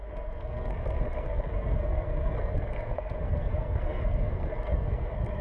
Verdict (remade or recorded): remade